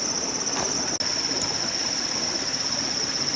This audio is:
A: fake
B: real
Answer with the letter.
B